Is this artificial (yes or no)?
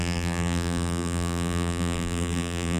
yes